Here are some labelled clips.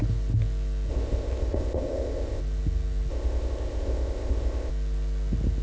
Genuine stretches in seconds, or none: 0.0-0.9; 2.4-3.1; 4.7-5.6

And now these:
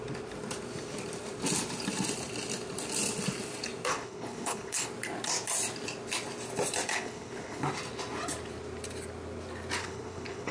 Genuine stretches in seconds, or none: 0.0-3.9; 4.9-6.9; 7.6-9.8